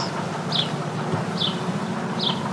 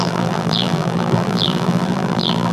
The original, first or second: first